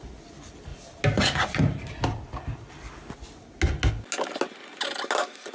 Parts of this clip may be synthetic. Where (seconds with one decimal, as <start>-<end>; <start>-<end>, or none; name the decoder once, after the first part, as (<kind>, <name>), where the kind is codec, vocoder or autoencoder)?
none